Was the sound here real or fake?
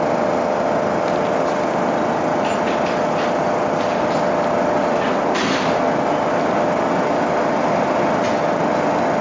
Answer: real